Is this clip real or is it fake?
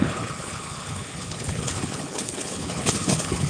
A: fake